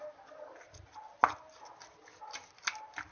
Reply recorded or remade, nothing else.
recorded